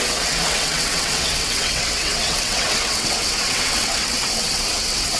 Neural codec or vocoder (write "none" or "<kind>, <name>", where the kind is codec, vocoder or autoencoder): vocoder, WaveNeXt